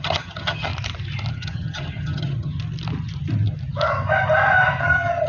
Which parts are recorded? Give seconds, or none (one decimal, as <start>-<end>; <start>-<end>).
0.7-1.3; 2.5-4.8

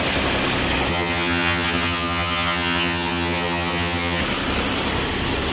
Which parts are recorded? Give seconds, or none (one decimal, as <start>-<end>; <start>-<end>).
0.0-0.9; 4.2-5.5

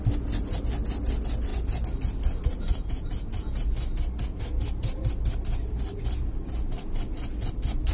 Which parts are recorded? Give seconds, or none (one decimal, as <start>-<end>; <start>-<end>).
0.0-7.9

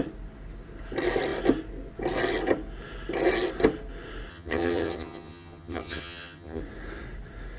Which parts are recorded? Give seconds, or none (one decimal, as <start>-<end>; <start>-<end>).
0.0-4.3; 6.6-7.6

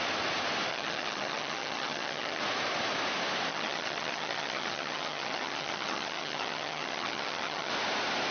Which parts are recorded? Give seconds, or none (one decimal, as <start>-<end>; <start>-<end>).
0.0-0.7; 2.4-3.5; 7.7-8.3

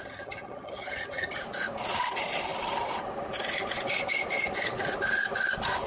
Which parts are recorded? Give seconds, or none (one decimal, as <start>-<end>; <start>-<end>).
1.3-5.9

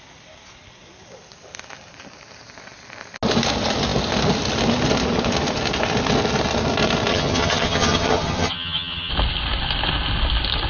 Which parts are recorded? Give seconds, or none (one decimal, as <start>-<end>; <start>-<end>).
0.0-7.1; 9.1-10.7